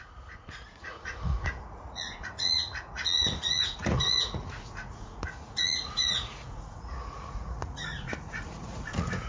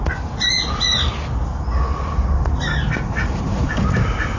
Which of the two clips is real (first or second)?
second